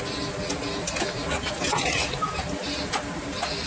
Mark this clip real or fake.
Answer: real